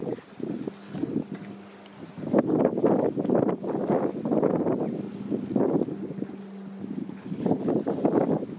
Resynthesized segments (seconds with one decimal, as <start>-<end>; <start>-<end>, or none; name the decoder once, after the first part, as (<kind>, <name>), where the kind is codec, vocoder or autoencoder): 7.0-7.7 (codec, HILCodec)

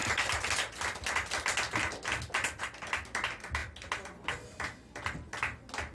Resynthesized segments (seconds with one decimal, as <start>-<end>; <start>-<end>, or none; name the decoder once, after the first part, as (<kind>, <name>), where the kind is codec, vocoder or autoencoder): none

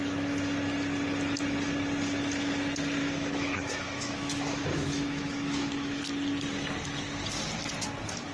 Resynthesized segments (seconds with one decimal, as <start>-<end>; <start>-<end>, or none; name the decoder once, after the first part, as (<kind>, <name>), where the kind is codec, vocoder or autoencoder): 3.0-6.0 (autoencoder, DAC-VAE)

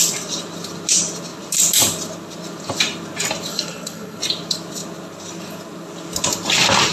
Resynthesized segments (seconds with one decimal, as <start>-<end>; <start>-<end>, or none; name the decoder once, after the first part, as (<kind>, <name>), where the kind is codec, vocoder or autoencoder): 3.5-4.2 (codec, SNAC)

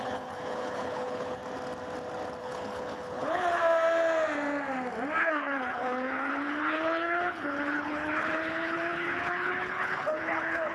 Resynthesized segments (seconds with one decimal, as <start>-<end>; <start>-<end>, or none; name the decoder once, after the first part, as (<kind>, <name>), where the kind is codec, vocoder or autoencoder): 0.0-1.4 (codec, HILCodec); 2.4-3.6; 5.2-10.7

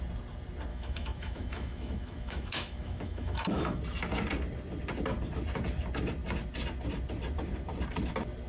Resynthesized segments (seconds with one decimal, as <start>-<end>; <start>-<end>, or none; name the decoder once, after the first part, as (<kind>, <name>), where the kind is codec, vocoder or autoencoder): 0.7-3.8 (autoencoder, DAC-VAE)

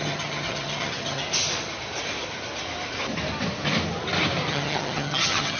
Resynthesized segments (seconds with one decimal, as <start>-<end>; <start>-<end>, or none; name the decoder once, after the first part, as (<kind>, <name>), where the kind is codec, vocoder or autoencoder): 0.0-1.2 (vocoder, HiFi-GAN); 4.5-5.6

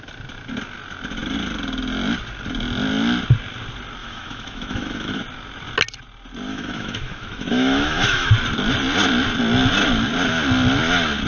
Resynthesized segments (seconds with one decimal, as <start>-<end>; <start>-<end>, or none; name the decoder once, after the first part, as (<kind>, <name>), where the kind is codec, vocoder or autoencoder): 4.0-5.2 (autoencoder, DAC-VAE); 6.5-8.3